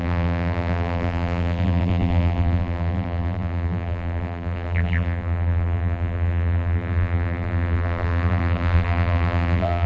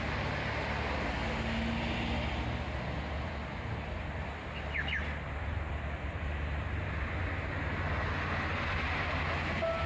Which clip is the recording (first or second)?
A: second